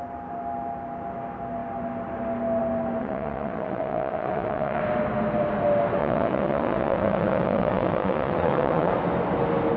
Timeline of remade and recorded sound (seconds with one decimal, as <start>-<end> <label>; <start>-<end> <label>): 0.0-3.0 recorded; 3.0-4.8 remade; 4.8-6.0 recorded; 6.0-8.9 remade; 8.9-9.8 recorded